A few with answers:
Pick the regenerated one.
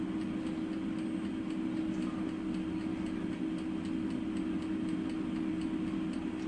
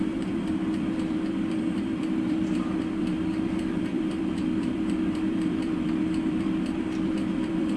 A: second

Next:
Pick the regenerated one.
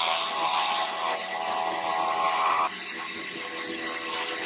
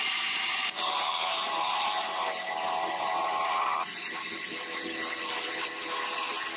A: second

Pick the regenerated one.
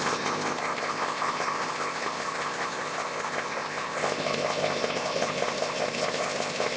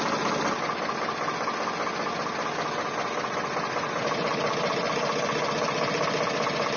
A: first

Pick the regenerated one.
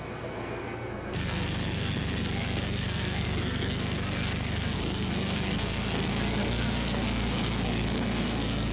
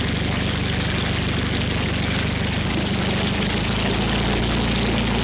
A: first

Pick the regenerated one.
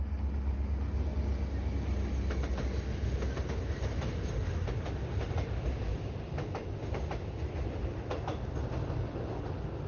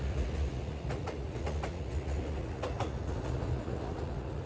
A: second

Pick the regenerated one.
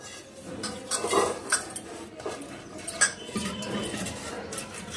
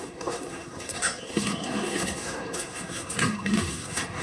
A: second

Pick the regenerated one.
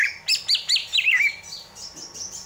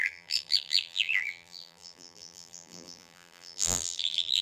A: second